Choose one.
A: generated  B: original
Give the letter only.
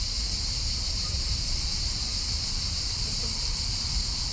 A